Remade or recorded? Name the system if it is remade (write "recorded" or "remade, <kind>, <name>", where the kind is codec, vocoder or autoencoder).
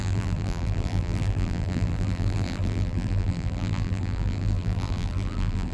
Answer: remade, vocoder, BigVGAN v2